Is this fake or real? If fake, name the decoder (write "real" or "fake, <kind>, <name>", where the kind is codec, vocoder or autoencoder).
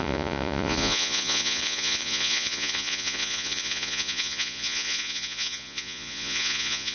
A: fake, vocoder, Vocos